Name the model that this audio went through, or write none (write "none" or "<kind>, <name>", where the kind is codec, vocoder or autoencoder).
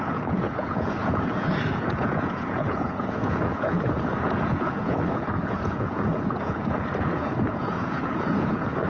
vocoder, Vocos